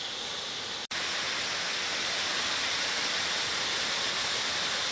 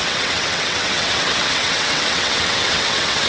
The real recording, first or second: first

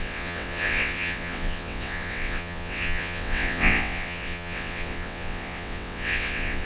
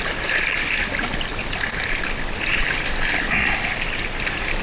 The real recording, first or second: second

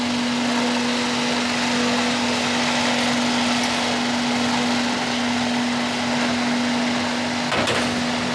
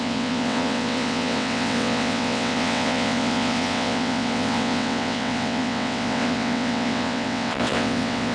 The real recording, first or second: first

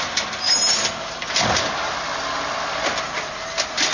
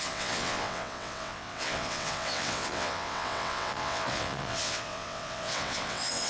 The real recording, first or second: first